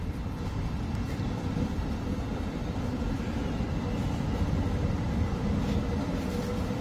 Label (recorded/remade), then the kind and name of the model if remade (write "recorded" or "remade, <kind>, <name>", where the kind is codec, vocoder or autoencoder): remade, vocoder, BigVGAN v2